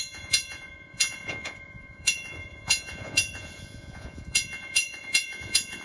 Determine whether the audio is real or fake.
fake